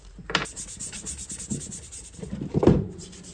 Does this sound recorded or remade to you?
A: remade